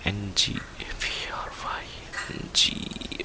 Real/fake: real